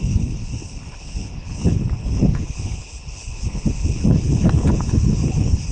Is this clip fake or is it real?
fake